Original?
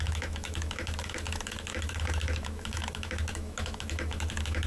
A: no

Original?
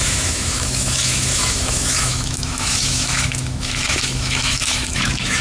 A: no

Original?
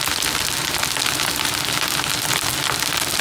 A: yes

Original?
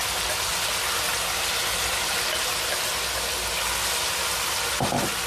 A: yes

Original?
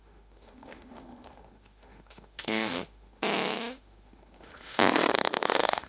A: no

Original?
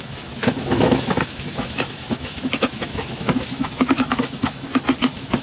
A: no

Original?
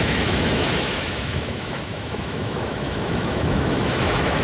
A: no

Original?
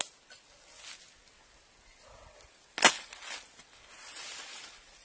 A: yes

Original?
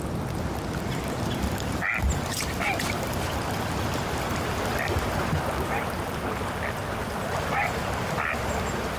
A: yes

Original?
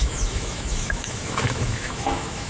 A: no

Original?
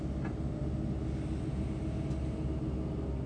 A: yes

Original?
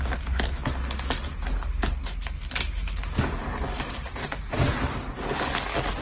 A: yes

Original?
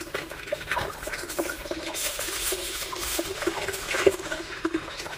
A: no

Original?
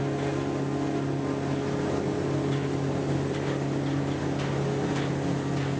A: yes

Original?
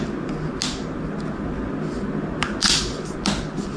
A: yes